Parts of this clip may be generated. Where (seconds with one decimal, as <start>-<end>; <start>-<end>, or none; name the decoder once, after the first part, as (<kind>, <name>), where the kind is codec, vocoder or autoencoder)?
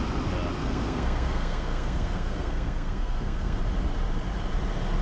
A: 0.6-3.6 (codec, SNAC)